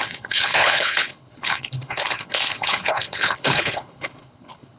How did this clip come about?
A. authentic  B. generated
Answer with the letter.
B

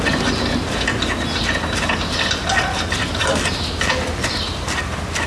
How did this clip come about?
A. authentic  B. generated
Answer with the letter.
A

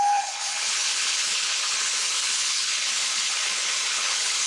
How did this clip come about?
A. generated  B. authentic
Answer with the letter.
A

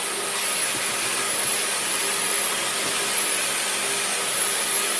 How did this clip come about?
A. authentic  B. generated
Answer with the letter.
A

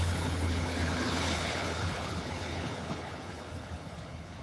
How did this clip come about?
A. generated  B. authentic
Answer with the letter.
A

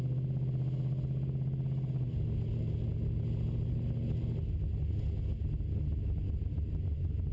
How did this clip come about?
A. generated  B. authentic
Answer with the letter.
B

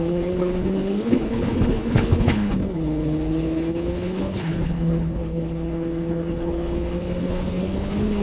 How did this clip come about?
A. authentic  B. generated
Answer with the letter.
B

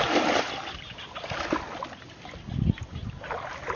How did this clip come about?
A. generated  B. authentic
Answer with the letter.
B